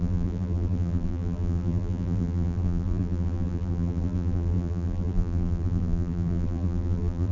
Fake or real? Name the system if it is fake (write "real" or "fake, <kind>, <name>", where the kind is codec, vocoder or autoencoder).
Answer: fake, vocoder, BigVGAN v2